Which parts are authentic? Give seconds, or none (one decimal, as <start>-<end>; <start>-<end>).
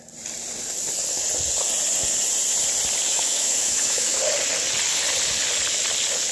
0.0-3.1; 4.2-6.3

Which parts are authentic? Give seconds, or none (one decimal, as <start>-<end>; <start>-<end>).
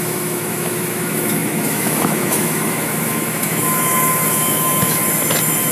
5.0-5.7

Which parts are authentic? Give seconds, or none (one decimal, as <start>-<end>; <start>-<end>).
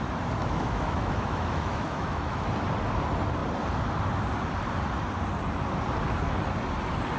0.0-0.4; 2.5-7.2